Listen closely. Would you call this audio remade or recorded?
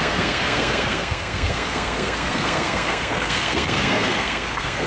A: remade